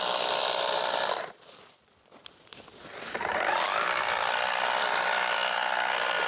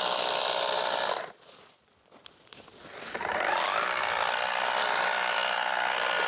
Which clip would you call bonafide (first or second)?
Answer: second